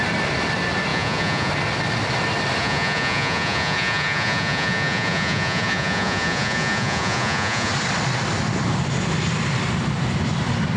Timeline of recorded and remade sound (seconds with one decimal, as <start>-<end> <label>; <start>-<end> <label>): 0.0-0.9 recorded; 0.9-1.5 remade; 1.5-2.6 recorded; 2.6-7.7 remade; 7.7-10.8 recorded

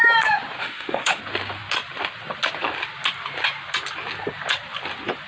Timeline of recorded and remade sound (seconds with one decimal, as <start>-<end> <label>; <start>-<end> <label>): 0.0-0.6 recorded; 0.6-1.2 remade; 1.2-5.3 recorded